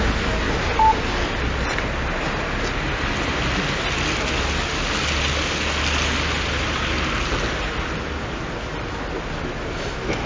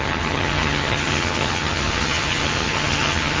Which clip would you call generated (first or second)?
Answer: second